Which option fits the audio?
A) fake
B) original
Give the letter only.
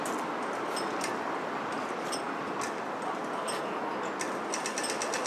B